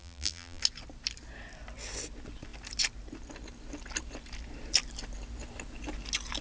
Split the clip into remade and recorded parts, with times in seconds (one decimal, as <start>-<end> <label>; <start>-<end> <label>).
0.0-0.6 remade; 0.6-6.4 recorded